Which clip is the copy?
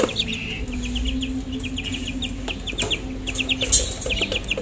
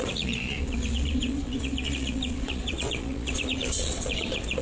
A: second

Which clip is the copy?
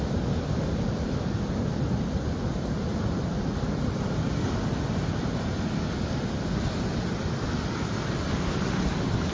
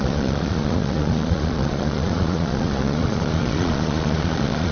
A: second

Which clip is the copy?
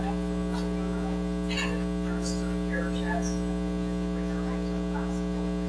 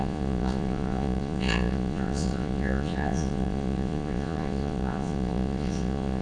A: second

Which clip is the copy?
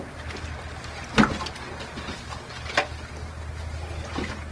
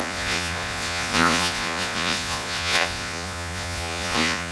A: second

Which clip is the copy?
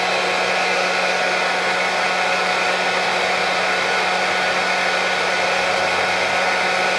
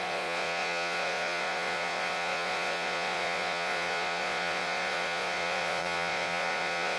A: second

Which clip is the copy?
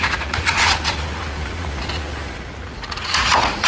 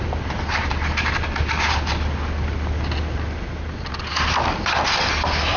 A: first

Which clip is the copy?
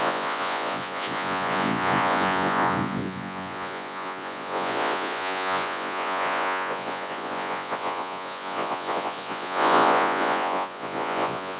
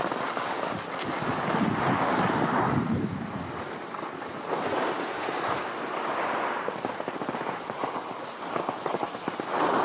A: first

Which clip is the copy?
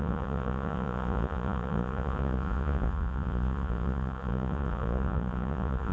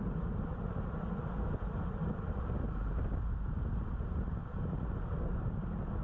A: first